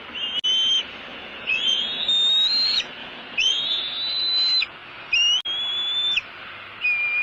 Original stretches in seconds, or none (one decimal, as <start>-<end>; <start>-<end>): 0.0-1.1; 1.8-3.0; 3.8-7.2